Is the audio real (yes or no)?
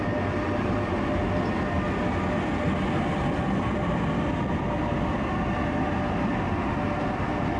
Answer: yes